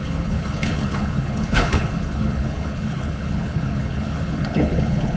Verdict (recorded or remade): remade